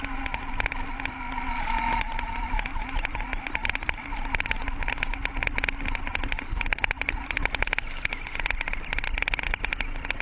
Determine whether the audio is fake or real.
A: real